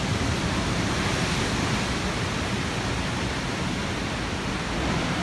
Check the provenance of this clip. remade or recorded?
recorded